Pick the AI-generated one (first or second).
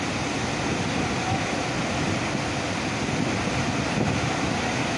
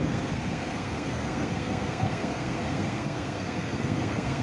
second